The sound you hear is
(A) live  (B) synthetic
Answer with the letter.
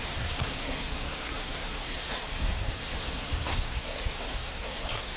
B